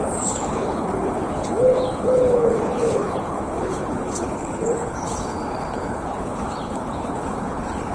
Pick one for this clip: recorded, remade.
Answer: remade